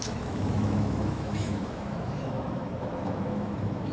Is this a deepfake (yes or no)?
yes